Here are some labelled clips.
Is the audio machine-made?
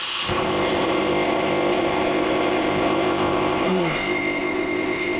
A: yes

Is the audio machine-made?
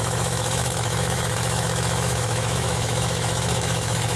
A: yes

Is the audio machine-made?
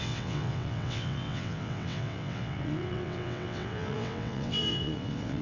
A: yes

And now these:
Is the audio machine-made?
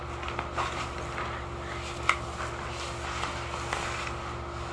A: no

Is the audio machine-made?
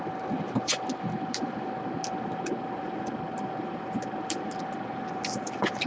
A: no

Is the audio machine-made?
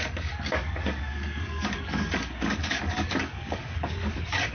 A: yes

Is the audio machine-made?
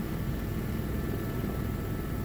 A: no